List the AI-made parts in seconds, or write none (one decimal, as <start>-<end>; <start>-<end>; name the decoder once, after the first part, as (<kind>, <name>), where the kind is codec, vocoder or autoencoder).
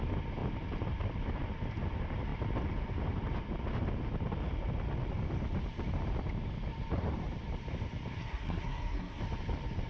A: 8.2-9.2 (codec, SNAC)